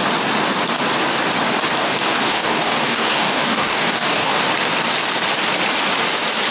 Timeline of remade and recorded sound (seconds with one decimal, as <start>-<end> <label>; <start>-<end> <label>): 0.0-1.8 recorded; 1.8-4.5 remade; 4.5-6.5 recorded